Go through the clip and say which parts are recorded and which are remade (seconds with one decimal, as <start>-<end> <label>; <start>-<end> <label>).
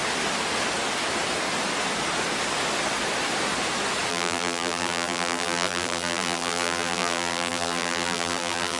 0.0-4.1 recorded; 4.1-8.8 remade